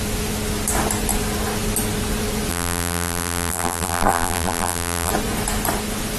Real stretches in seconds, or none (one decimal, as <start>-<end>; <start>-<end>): 0.0-2.5; 5.1-6.2